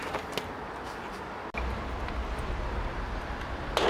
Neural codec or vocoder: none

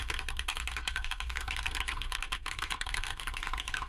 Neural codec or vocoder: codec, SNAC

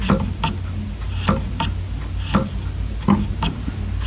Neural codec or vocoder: none